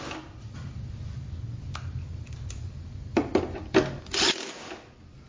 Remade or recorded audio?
recorded